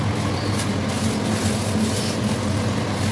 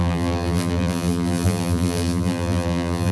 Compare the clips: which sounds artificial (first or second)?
second